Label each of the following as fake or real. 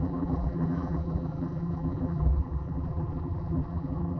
fake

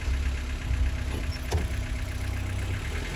real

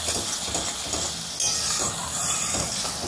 real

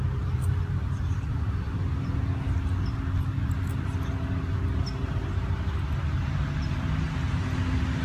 real